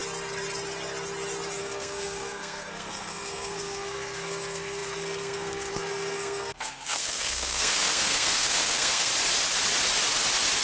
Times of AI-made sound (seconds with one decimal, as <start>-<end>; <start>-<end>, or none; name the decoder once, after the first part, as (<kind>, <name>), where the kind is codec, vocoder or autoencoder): 1.6-9.1 (codec, SNAC)